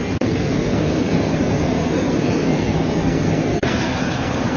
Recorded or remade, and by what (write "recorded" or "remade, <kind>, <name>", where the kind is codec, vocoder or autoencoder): remade, codec, SNAC